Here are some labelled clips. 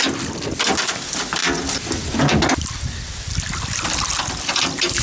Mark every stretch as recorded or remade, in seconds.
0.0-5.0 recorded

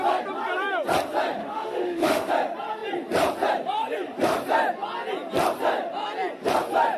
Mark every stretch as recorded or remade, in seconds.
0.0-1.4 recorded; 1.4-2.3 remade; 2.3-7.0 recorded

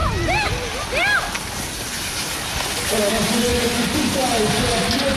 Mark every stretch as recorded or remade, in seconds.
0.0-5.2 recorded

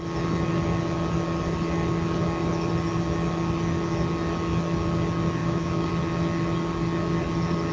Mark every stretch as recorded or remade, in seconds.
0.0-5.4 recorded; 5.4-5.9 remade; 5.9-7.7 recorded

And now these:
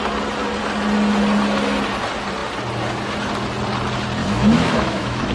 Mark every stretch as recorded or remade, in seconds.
0.0-4.2 recorded; 4.2-5.3 remade